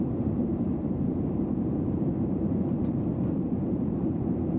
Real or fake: fake